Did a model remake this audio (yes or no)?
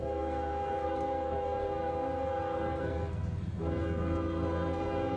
yes